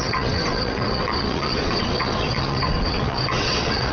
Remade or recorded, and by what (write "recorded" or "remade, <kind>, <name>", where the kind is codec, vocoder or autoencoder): remade, vocoder, WaveNeXt